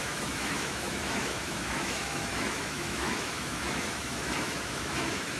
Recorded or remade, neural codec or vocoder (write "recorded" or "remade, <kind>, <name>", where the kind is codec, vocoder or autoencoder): remade, autoencoder, DAC-VAE